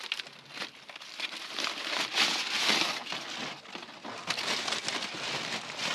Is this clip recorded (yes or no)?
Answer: yes